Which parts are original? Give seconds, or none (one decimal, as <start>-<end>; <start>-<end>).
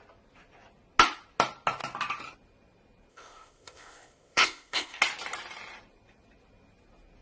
0.0-3.1; 5.0-7.2